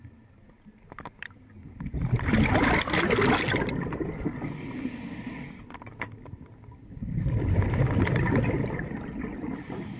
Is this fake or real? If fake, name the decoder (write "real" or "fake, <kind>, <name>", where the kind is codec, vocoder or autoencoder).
real